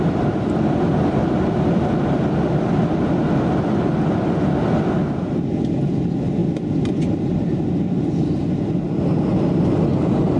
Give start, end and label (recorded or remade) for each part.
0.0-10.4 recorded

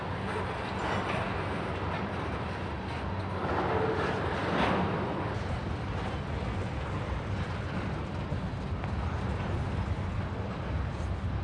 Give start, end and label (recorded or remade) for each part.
0.0-11.4 recorded

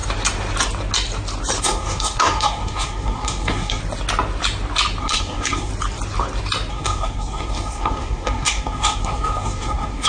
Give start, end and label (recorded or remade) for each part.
0.0-1.6 recorded; 1.6-3.8 remade; 3.8-5.0 recorded; 5.0-5.7 remade; 5.7-6.7 recorded; 6.7-10.1 remade

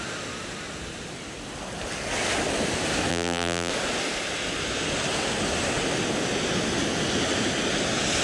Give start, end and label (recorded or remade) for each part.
0.0-3.1 recorded; 3.1-3.7 remade; 3.7-8.2 recorded